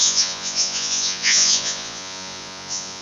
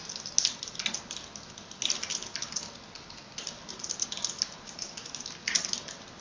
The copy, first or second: first